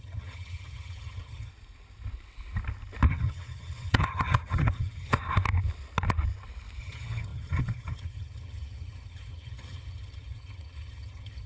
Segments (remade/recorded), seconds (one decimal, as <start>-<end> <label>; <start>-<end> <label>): 0.0-1.5 remade; 1.5-3.1 recorded; 3.1-5.2 remade; 5.2-6.8 recorded; 6.8-11.5 remade